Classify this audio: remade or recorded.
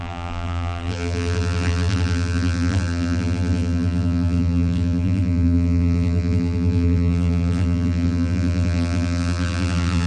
remade